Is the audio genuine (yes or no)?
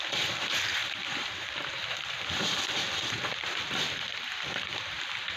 yes